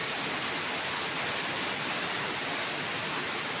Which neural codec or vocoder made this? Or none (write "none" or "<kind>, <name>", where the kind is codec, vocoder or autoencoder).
none